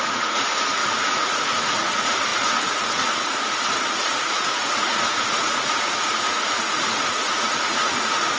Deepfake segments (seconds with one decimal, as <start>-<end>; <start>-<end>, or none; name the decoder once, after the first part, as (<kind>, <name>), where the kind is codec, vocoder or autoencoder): 0.0-8.4 (vocoder, Vocos)